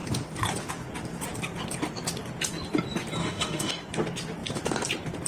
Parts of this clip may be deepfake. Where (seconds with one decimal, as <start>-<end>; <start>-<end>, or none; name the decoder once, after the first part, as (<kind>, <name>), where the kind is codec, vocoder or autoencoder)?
3.2-3.7 (autoencoder, DAC-VAE)